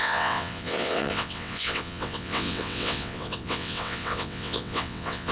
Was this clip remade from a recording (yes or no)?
yes